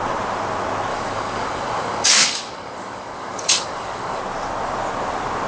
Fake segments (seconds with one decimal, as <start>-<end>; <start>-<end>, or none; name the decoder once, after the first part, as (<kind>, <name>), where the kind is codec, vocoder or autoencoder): 0.9-4.2 (codec, DAC)